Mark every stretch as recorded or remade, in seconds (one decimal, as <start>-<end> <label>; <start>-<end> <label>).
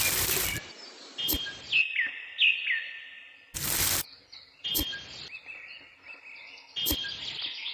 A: 0.0-7.7 recorded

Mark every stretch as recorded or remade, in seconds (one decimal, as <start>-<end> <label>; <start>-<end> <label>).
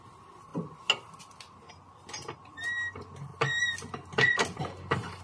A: 0.0-5.2 recorded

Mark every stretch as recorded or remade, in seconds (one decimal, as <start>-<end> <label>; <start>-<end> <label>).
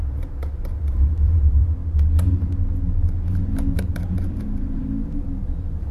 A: 0.0-1.8 remade; 1.8-3.8 recorded; 3.8-5.9 remade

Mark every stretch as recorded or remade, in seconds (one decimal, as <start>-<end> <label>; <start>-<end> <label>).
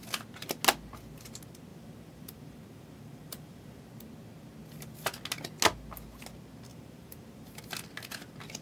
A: 0.0-1.7 recorded; 1.7-3.8 remade; 3.8-6.7 recorded; 6.7-7.6 remade; 7.6-8.6 recorded